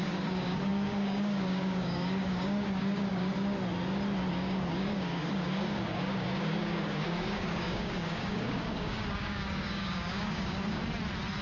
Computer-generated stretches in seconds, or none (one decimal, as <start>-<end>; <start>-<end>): 0.0-3.3; 4.3-10.8